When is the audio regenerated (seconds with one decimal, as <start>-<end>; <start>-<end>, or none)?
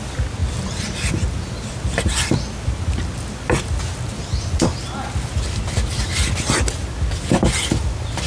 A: none